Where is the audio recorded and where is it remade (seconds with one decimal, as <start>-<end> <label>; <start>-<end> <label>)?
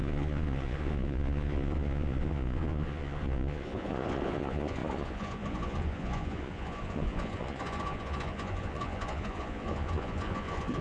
0.0-10.8 remade